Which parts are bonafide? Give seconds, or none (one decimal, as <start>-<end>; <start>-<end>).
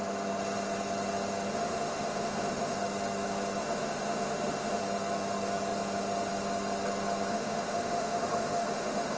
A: 0.0-1.5; 2.8-3.6; 4.8-7.3